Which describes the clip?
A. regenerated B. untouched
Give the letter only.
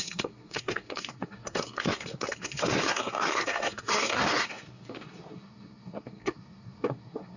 A